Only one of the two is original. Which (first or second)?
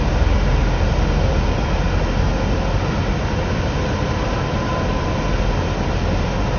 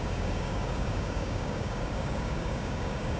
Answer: first